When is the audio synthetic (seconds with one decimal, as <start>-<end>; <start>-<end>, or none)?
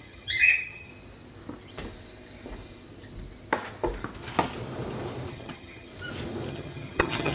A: 0.0-0.9; 5.3-5.9; 6.5-7.3